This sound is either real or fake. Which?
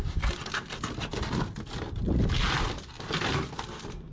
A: real